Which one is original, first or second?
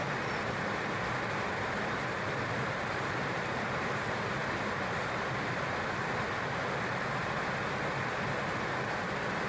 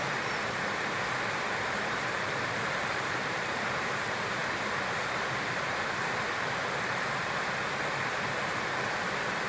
first